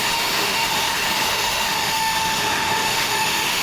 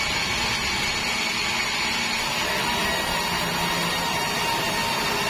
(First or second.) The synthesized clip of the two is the first